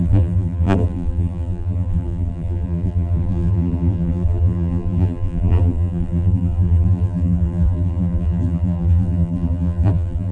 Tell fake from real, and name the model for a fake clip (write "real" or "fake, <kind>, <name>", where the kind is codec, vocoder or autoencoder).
fake, vocoder, BigVGAN v2